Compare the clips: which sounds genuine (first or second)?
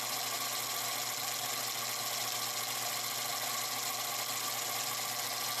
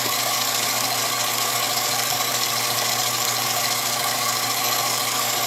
first